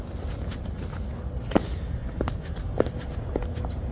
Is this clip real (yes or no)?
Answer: yes